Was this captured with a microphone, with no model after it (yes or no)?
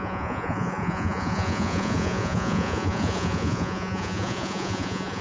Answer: no